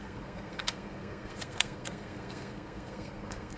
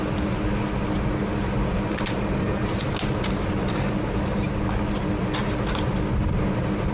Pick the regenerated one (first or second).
first